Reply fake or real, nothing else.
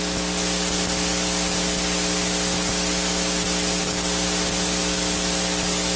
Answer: real